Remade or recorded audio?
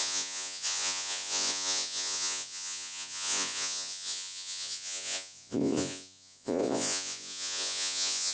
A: remade